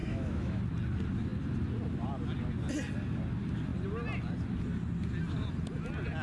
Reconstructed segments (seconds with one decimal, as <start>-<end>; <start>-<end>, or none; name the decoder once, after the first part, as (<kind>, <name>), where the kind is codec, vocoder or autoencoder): 0.0-0.6 (autoencoder, DAC-VAE)